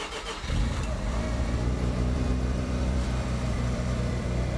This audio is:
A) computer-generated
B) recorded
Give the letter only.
A